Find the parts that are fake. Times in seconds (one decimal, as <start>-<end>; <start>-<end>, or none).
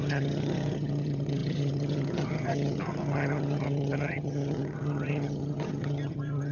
0.0-6.5